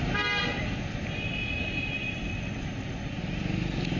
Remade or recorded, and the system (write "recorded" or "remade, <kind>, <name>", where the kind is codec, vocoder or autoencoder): recorded